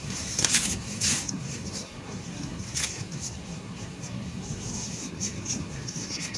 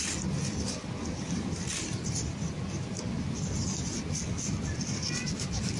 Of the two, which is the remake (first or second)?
first